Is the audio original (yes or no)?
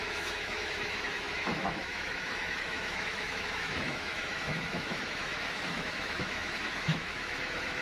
no